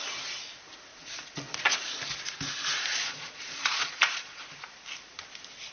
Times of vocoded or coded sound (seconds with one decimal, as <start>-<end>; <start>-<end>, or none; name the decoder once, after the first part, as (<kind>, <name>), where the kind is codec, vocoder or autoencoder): 0.9-2.0 (vocoder, Vocos); 2.9-4.4